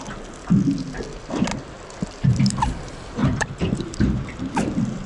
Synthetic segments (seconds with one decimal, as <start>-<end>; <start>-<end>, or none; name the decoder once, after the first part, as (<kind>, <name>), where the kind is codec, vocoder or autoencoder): 3.2-5.1 (vocoder, BigVGAN v2)